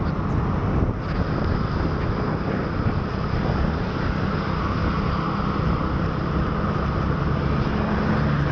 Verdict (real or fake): real